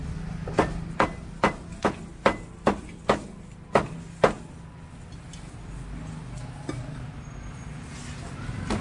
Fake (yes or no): no